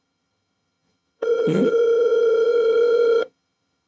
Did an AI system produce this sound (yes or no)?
yes